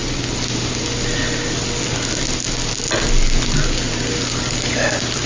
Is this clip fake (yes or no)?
no